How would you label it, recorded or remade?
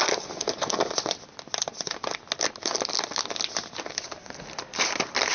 recorded